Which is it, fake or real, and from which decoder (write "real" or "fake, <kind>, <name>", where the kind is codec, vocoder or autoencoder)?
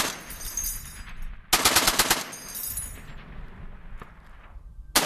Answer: real